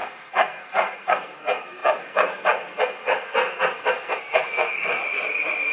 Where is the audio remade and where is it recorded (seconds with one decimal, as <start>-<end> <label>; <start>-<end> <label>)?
0.0-5.0 remade; 5.0-5.7 recorded